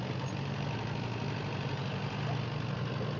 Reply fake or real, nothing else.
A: real